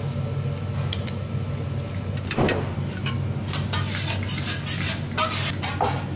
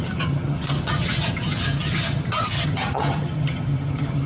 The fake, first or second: second